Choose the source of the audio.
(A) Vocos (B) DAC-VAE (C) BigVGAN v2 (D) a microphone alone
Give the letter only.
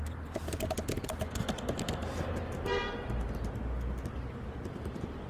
D